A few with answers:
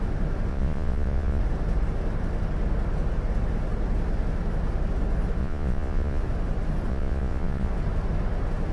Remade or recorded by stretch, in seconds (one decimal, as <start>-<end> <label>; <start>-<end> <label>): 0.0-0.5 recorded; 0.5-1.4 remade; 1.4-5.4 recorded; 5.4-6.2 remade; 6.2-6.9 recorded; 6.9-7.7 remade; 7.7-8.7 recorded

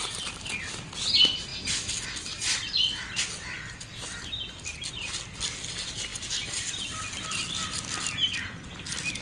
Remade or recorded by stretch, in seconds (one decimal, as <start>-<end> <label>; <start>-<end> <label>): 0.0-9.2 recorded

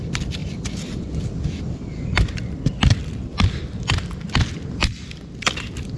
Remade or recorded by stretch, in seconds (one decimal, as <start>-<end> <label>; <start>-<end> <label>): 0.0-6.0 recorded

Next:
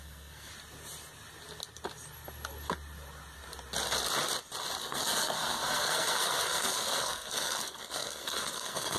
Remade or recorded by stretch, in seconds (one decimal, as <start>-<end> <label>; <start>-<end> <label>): 0.0-0.5 remade; 0.5-4.8 recorded; 4.8-9.0 remade